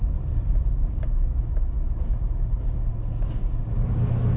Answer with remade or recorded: recorded